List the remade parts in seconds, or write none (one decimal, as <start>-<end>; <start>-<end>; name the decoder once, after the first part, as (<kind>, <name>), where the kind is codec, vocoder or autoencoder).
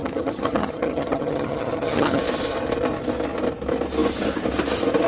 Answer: 0.0-2.2 (vocoder, HiFi-GAN)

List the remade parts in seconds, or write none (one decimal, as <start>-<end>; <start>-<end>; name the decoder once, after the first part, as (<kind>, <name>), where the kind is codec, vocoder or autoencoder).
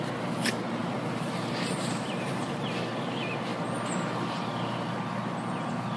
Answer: 0.8-2.5 (vocoder, BigVGAN v2)